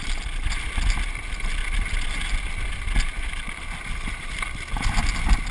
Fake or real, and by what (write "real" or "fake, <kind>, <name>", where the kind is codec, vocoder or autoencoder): real